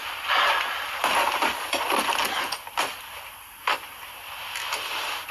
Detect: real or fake real